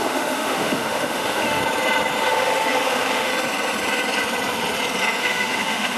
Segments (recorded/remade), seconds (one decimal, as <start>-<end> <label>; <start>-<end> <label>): 0.0-1.6 remade; 1.6-2.2 recorded; 2.2-3.3 remade; 3.3-5.2 recorded; 5.2-6.0 remade